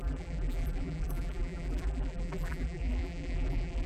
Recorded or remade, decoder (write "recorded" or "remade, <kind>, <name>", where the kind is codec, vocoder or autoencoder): remade, vocoder, BigVGAN v2